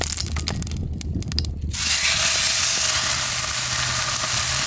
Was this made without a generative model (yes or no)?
yes